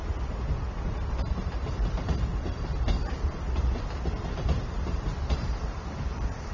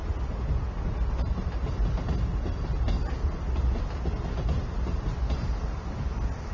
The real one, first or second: second